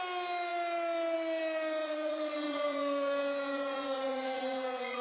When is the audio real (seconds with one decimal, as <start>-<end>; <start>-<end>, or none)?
0.0-1.8